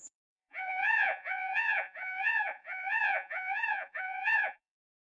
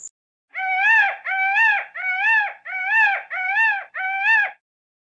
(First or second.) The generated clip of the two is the first